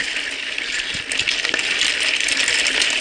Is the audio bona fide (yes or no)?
yes